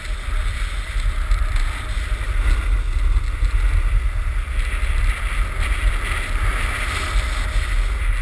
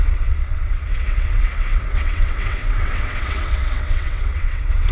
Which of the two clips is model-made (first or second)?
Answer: second